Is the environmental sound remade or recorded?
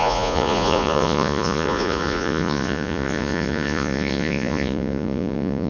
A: remade